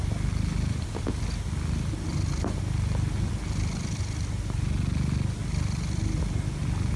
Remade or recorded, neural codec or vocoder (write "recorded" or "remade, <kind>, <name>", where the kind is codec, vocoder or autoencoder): recorded